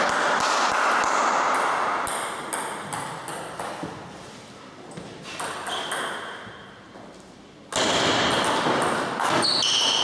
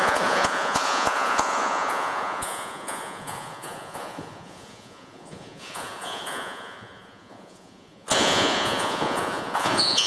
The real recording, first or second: first